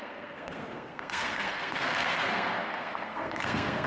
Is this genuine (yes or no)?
no